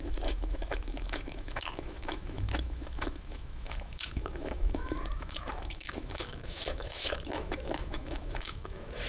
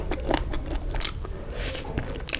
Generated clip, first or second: first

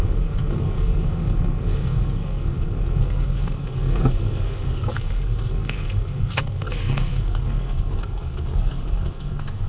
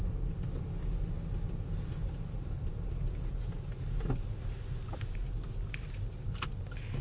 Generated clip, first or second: first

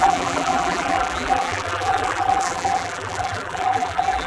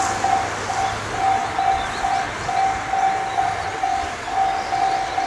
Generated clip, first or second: first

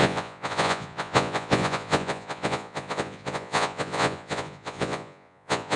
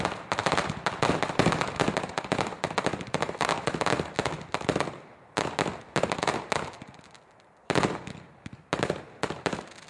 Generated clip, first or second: first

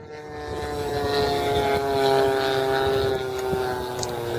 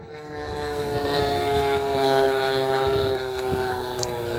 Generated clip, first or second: second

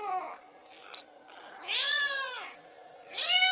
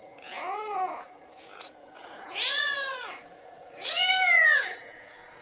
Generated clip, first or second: second